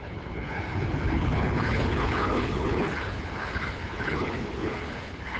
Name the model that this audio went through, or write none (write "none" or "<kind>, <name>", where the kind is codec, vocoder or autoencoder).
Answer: codec, HILCodec